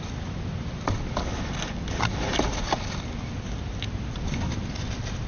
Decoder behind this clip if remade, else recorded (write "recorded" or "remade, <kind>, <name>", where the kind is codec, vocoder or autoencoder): recorded